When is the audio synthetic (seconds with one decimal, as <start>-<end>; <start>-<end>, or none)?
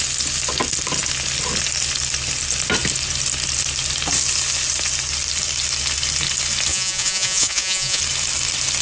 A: 6.7-8.0